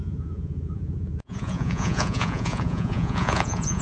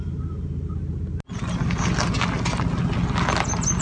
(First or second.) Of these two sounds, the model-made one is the first